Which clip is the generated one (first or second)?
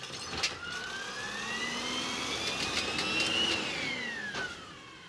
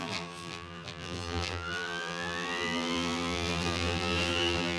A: second